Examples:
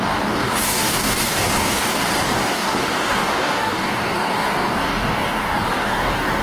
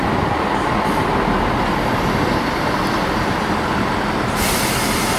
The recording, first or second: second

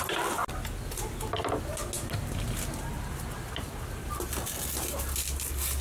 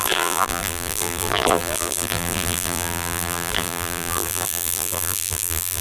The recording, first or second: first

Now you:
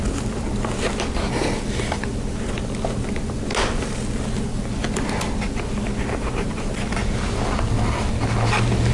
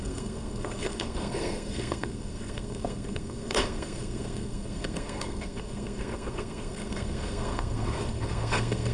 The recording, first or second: first